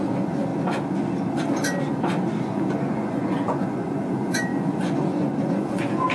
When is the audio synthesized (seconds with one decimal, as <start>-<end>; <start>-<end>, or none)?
0.0-0.5; 2.4-6.1